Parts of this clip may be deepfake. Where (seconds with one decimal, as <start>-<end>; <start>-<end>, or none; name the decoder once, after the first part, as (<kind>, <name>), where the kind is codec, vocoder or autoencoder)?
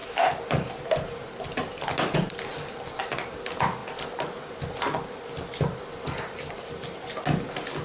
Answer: none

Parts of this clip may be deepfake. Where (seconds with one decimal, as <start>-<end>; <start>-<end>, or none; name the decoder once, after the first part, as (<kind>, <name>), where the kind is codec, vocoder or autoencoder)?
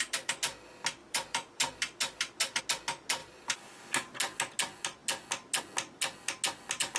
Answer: 1.0-2.6 (vocoder, BigVGAN v2); 3.2-3.8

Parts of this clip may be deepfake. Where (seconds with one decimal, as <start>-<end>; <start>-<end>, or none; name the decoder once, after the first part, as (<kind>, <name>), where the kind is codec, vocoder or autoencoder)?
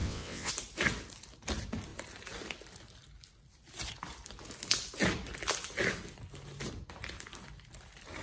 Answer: 0.0-0.5 (vocoder, WaveNeXt)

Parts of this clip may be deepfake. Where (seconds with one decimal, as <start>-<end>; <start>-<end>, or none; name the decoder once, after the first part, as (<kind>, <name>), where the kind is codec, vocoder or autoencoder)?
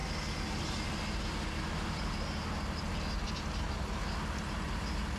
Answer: none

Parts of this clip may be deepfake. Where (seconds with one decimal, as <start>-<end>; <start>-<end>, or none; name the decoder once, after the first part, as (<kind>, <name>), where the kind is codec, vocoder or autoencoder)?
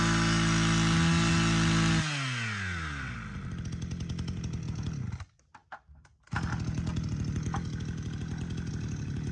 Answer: none